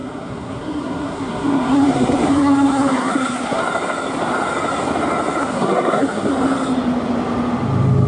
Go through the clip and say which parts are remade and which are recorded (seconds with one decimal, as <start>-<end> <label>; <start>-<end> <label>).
0.0-3.6 remade; 3.6-5.4 recorded; 5.4-6.3 remade; 6.3-8.1 recorded